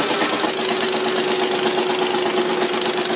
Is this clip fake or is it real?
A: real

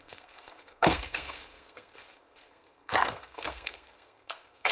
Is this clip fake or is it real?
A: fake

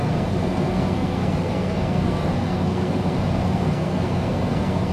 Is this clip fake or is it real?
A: fake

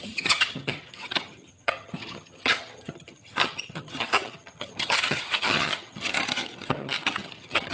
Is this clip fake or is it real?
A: fake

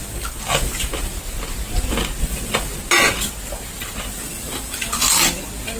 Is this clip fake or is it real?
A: real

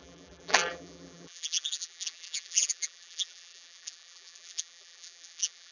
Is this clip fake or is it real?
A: fake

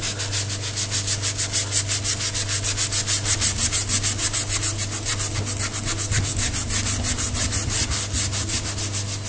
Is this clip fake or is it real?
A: real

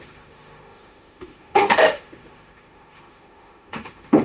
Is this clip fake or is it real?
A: fake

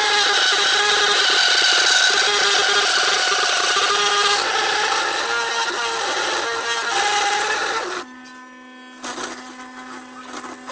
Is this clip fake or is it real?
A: real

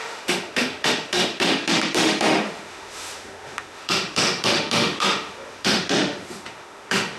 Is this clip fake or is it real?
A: fake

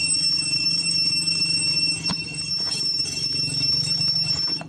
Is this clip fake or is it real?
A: fake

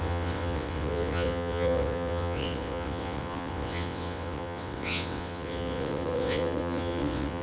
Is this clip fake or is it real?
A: fake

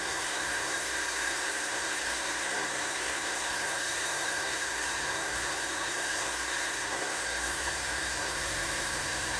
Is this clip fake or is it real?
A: fake